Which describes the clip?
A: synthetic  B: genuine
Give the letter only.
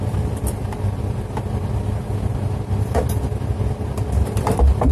B